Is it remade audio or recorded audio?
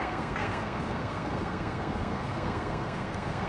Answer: remade